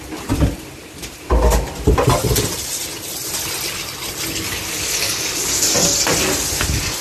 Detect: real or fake real